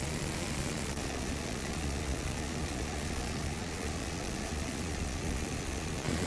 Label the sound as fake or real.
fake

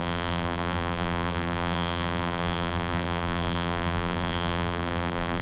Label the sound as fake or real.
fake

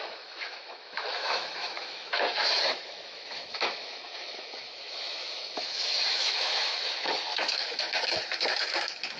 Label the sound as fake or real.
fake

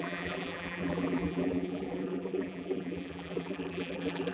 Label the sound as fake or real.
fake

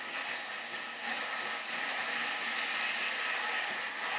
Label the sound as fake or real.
real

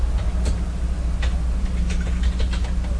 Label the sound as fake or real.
real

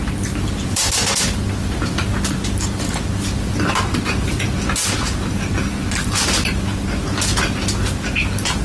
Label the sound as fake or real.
real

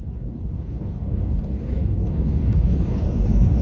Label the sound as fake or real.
fake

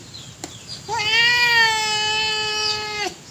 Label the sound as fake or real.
real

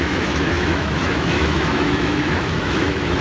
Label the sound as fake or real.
fake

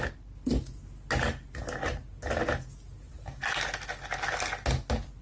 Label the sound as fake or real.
real